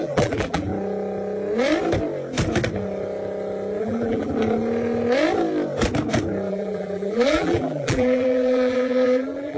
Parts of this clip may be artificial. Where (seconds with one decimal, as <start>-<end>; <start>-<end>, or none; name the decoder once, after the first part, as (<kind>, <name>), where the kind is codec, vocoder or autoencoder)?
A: 0.0-0.7 (vocoder, BigVGAN v2); 3.8-4.3; 6.5-9.6